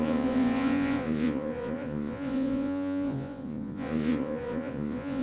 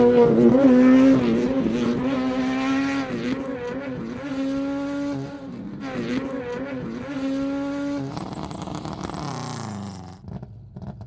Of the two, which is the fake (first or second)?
first